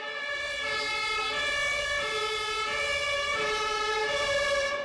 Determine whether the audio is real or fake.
real